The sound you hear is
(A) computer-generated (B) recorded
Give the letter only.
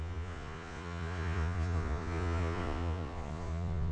A